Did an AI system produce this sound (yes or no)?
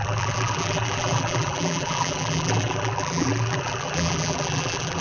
yes